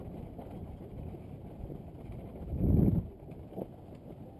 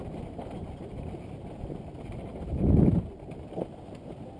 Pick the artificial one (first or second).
second